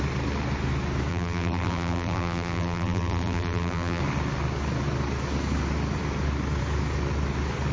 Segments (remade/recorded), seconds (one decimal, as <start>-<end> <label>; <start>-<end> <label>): 0.0-1.1 recorded; 1.1-4.0 remade; 4.0-7.7 recorded